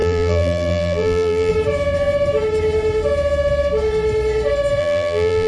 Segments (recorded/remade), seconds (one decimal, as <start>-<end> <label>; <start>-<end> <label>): 0.0-1.5 remade; 1.5-4.8 recorded; 4.8-5.5 remade